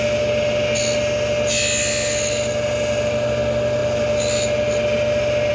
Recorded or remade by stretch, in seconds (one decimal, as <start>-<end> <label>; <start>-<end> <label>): 0.0-5.5 recorded